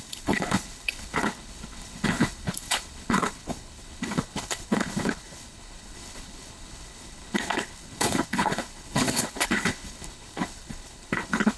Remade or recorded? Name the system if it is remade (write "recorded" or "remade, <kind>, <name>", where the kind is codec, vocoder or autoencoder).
remade, codec, HILCodec